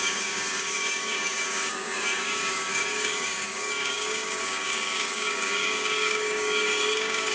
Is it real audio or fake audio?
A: fake